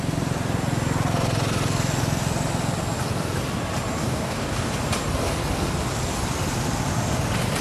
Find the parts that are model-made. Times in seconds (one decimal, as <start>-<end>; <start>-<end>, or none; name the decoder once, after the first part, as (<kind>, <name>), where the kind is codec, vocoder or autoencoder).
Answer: 4.0-4.7 (codec, DAC)